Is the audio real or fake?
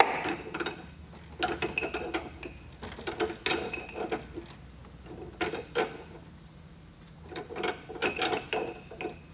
real